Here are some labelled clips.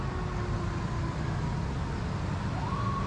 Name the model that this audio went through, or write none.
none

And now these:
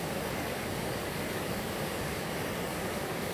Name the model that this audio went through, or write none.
codec, DAC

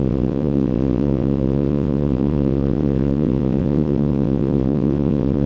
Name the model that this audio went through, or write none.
vocoder, WaveNeXt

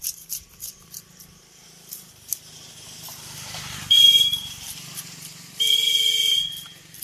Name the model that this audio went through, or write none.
vocoder, BigVGAN v2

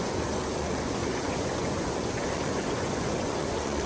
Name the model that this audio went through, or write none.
vocoder, Vocos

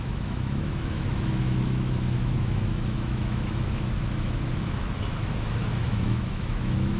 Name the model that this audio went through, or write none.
autoencoder, DAC-VAE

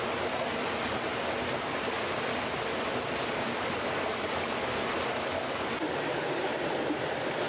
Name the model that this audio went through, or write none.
none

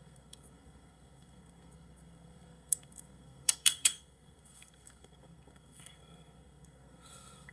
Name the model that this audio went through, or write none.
codec, SNAC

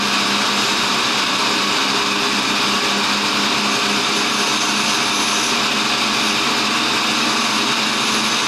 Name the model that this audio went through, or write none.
none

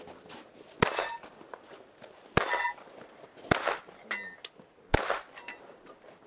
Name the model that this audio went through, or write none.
none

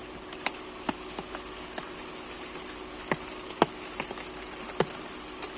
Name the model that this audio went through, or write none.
none